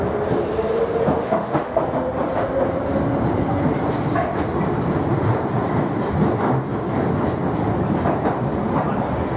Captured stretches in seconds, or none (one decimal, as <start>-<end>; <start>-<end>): 0.0-1.2; 1.8-9.4